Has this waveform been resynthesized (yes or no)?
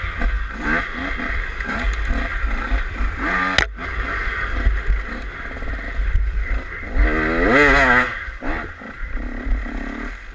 no